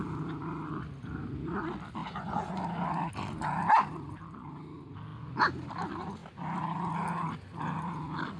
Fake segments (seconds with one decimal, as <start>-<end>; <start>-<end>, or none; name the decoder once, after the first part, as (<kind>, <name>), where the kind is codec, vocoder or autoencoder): 2.0-2.6 (vocoder, Vocos)